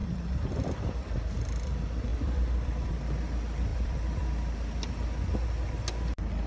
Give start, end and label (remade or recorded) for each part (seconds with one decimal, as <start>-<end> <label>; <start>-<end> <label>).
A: 0.0-1.7 remade; 1.7-2.1 recorded; 2.1-2.9 remade; 2.9-3.7 recorded; 3.7-4.3 remade; 4.3-6.5 recorded